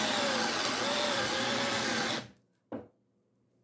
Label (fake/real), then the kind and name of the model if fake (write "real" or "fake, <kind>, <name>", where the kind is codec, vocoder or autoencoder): real